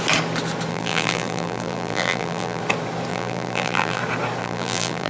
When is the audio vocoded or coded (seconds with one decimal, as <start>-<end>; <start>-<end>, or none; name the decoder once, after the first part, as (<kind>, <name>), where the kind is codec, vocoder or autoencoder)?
0.7-2.6 (vocoder, BigVGAN v2); 3.1-4.0; 4.4-5.1